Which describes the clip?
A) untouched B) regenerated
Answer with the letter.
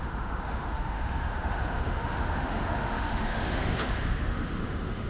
B